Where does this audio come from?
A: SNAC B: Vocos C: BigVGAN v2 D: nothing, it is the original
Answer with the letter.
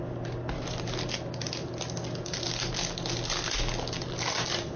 D